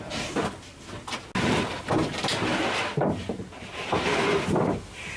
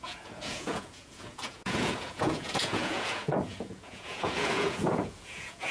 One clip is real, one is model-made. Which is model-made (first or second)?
second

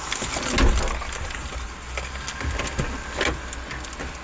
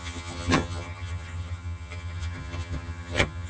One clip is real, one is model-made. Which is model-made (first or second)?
second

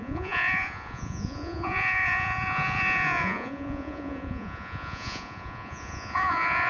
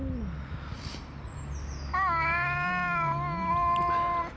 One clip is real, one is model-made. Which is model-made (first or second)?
first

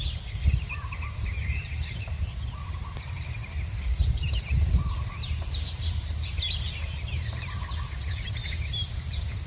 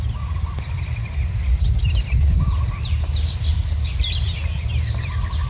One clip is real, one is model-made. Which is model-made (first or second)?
first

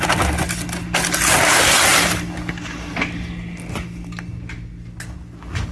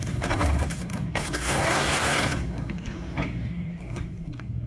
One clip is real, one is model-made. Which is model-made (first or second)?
second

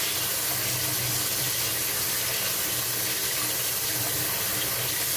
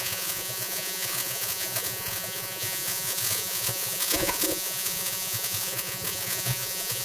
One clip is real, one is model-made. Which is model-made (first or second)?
second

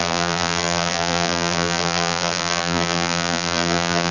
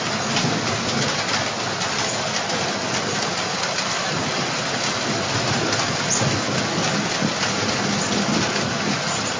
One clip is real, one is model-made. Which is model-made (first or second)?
first